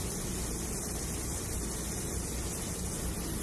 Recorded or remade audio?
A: recorded